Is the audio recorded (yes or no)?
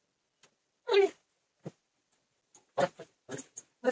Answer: yes